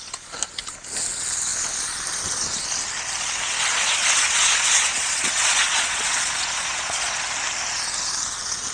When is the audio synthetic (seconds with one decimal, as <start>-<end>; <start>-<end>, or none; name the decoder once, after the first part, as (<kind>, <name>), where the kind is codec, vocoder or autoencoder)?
3.7-7.2 (vocoder, Vocos)